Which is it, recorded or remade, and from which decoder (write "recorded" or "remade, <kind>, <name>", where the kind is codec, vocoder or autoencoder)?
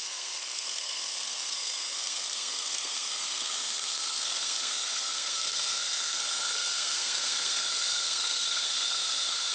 remade, codec, SNAC